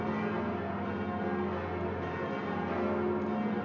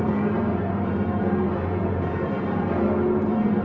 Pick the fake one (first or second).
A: second